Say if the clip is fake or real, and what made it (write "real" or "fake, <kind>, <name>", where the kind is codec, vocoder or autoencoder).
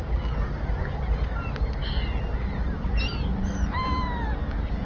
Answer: real